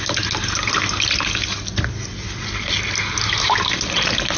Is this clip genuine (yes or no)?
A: yes